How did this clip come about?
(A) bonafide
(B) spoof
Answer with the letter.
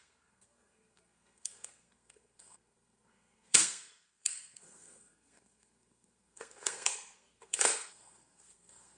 B